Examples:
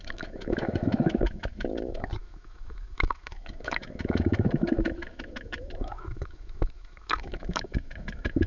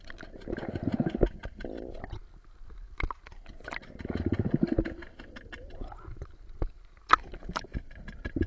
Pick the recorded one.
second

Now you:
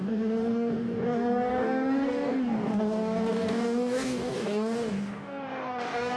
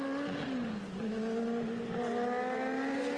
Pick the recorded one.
second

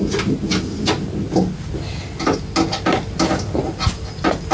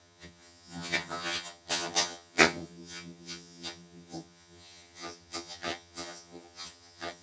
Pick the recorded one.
first